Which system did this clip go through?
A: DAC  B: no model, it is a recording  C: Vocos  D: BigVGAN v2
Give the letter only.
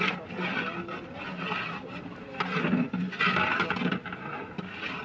B